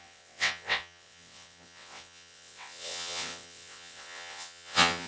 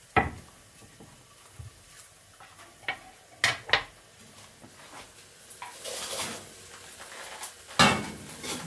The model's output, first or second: first